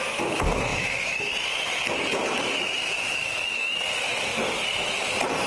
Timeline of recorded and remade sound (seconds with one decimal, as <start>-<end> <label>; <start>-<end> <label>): 0.0-0.7 recorded; 0.7-1.3 remade; 1.3-3.1 recorded; 3.1-3.8 remade; 3.8-5.5 recorded